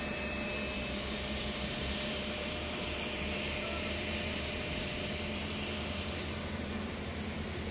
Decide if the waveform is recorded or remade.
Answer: remade